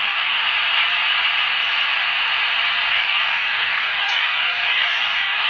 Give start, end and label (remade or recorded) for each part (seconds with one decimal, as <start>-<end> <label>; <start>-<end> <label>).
0.0-0.4 remade; 0.4-2.9 recorded; 2.9-5.5 remade